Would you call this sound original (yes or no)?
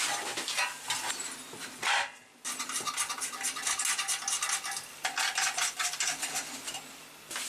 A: yes